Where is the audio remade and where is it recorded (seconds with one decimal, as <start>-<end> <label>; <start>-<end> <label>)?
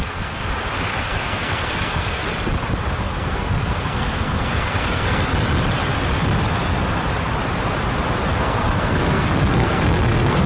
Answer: 0.0-0.4 remade; 0.4-1.0 recorded; 1.0-2.2 remade; 2.2-3.0 recorded; 3.0-5.3 remade; 5.3-8.4 recorded; 8.4-10.5 remade